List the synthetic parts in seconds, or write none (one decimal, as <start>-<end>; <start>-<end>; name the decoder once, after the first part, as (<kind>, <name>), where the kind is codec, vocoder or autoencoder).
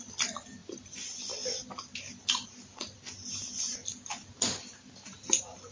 none